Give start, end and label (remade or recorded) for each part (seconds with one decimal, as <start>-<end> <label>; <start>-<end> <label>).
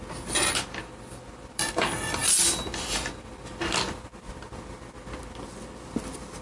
0.0-6.4 recorded